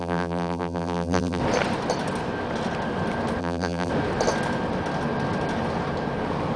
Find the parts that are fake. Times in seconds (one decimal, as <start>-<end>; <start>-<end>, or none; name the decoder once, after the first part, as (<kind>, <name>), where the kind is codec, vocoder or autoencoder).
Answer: 0.0-1.4 (vocoder, BigVGAN v2); 3.4-3.9